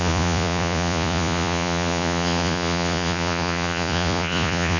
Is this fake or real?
fake